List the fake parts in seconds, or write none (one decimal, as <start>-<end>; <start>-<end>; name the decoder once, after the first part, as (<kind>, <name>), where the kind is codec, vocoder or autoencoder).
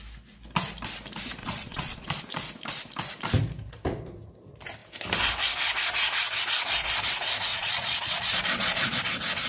1.4-2.2 (vocoder, Vocos); 7.5-9.0